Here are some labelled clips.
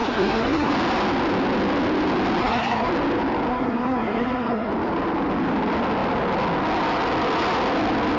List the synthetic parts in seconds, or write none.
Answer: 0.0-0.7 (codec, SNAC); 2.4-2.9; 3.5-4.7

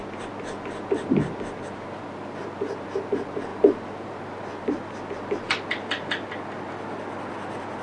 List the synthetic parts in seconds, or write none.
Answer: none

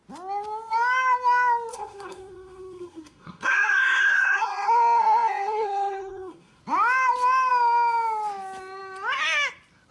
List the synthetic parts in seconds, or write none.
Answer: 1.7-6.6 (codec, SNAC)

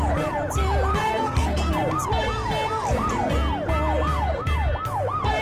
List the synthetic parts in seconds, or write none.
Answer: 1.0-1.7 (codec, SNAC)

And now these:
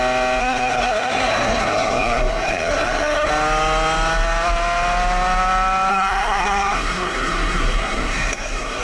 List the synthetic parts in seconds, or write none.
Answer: 0.4-3.3 (codec, SNAC); 5.9-8.8

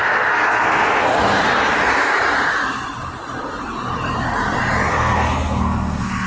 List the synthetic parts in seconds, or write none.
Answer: 0.0-1.4 (codec, SNAC); 4.9-6.3

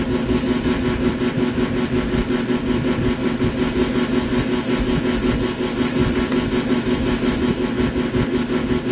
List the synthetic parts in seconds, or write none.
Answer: none

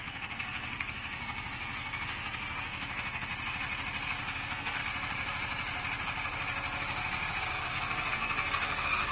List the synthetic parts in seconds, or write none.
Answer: 0.0-3.3 (codec, SNAC); 4.2-4.8; 7.4-9.1